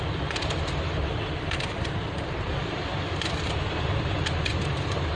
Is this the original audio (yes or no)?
no